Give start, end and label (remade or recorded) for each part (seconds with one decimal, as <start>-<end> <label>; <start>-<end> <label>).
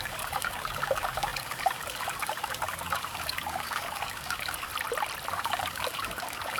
0.0-4.7 remade; 4.7-5.3 recorded; 5.3-6.6 remade